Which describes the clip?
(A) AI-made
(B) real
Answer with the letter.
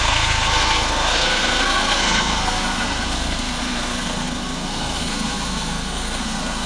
A